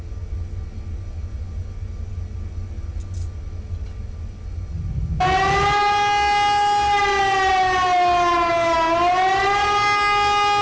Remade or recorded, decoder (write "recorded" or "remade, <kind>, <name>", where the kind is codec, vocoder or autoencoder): recorded